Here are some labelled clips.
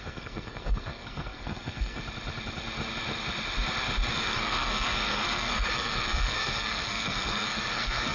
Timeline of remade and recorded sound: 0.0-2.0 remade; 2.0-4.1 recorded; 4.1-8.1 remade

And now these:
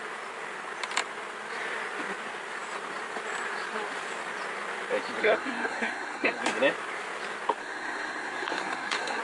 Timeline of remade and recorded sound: 0.0-5.2 recorded; 5.2-6.4 remade; 6.4-7.6 recorded; 7.6-9.2 remade

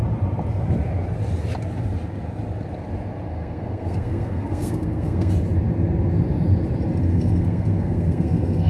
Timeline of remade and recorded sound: 0.0-3.3 recorded; 3.3-5.3 remade; 5.3-7.1 recorded; 7.1-8.7 remade

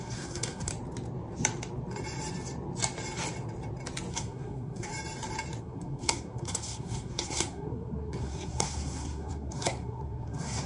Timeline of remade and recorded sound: 0.0-0.7 remade; 0.7-4.1 recorded; 4.1-4.9 remade; 4.9-5.6 recorded; 5.6-10.7 remade

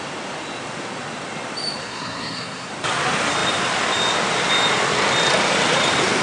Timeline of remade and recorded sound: 0.0-1.8 recorded; 1.8-2.7 remade; 2.7-6.2 recorded

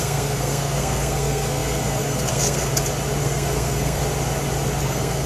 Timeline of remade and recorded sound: 0.0-2.7 remade; 2.7-3.2 recorded; 3.2-4.0 remade; 4.0-4.8 recorded; 4.8-5.3 remade